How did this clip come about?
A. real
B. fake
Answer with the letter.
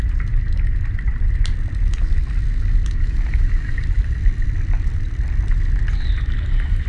A